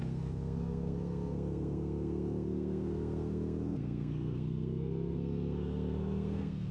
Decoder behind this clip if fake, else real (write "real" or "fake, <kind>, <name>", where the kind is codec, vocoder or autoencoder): fake, codec, SNAC